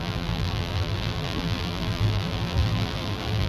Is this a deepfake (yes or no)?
yes